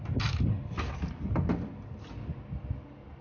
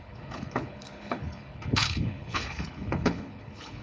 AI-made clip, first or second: second